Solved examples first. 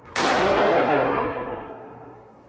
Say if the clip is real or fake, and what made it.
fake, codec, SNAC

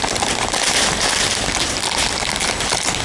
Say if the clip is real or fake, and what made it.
real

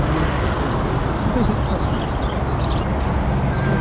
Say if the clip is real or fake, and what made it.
real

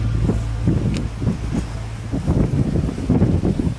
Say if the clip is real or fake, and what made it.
real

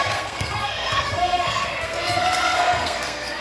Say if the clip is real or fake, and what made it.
fake, codec, SNAC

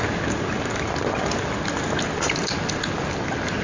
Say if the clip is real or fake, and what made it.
real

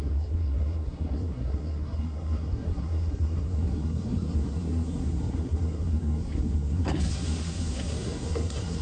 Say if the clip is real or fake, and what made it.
fake, codec, SNAC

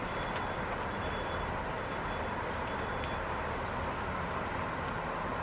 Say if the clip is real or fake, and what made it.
real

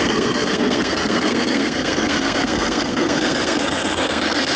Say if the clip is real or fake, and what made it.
fake, codec, SNAC